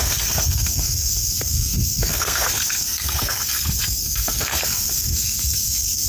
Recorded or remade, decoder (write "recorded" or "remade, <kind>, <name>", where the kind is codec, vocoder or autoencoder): remade, codec, SNAC